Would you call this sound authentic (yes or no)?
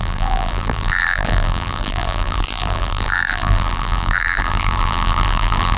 no